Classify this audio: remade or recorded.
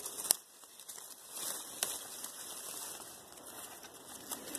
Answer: recorded